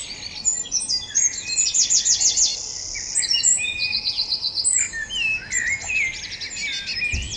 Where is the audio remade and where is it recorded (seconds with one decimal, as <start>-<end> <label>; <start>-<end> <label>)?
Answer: 0.0-7.4 recorded